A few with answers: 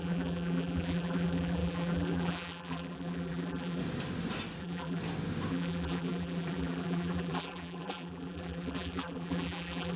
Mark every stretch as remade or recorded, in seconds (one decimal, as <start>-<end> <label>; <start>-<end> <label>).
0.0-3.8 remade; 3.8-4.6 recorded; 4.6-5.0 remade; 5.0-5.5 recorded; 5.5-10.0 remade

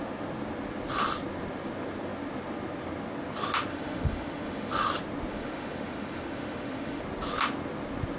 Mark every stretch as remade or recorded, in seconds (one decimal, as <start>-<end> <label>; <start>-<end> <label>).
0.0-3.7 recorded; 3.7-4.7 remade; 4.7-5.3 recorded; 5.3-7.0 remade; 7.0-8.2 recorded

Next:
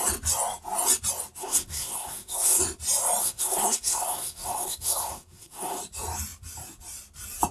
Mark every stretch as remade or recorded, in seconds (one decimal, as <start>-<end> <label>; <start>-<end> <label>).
0.0-1.4 recorded; 1.4-2.6 remade; 2.6-3.2 recorded; 3.2-5.8 remade; 5.8-7.5 recorded

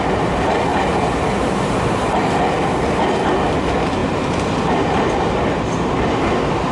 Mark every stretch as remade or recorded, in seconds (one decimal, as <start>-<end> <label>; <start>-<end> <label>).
0.0-0.7 recorded; 0.7-1.9 remade; 1.9-4.0 recorded; 4.0-6.3 remade; 6.3-6.7 recorded

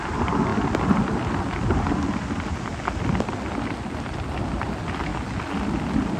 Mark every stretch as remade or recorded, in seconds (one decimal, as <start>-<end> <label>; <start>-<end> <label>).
0.0-6.2 recorded

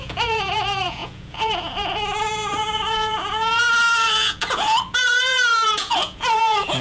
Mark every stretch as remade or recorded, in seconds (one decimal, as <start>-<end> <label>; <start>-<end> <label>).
0.0-6.8 remade

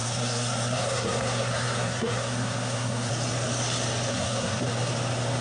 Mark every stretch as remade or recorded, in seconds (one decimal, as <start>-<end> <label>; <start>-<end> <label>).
0.0-3.1 remade; 3.1-4.1 recorded; 4.1-4.6 remade; 4.6-5.4 recorded